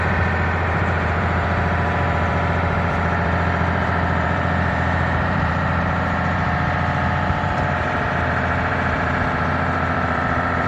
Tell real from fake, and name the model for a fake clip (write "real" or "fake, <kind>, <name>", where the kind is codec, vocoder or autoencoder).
fake, vocoder, BigVGAN v2